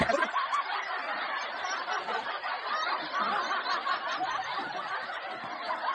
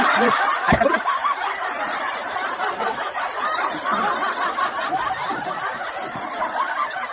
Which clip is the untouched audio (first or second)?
first